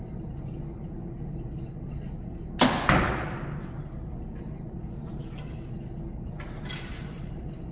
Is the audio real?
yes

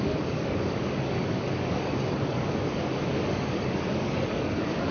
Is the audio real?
no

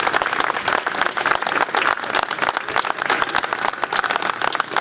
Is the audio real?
yes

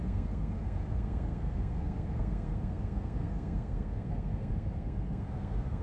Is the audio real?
no